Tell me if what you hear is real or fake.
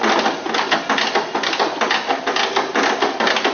real